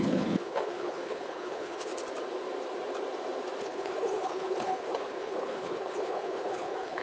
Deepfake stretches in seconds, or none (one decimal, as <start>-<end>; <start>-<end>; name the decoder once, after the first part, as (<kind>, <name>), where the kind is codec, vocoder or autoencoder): 0.0-1.9 (codec, HILCodec); 3.6-7.0